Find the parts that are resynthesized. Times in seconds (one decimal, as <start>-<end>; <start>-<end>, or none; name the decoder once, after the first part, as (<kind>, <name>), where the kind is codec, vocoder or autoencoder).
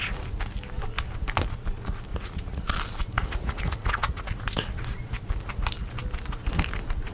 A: 2.1-2.7 (vocoder, Vocos); 3.2-4.8